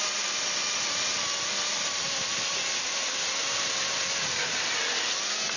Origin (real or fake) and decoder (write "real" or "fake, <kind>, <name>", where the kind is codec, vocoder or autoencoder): real